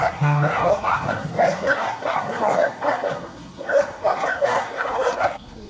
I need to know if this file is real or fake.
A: fake